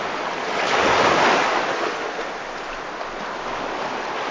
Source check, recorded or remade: recorded